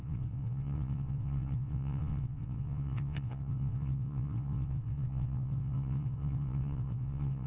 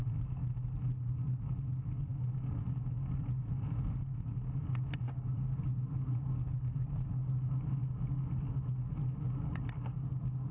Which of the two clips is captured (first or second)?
second